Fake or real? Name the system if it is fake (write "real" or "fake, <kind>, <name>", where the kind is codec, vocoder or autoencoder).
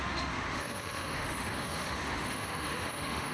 fake, autoencoder, DAC-VAE